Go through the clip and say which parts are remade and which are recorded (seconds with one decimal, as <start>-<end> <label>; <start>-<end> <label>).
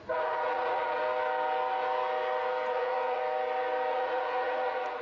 0.0-1.0 remade; 1.0-2.7 recorded; 2.7-3.2 remade; 3.2-3.9 recorded; 3.9-5.0 remade